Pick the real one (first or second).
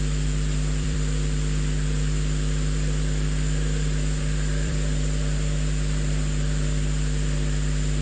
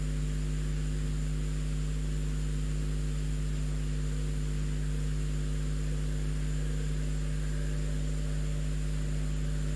second